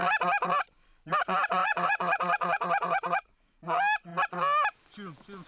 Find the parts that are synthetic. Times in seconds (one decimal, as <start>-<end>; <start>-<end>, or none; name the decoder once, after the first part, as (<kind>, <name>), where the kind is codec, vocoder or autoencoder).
1.6-3.6 (vocoder, Vocos)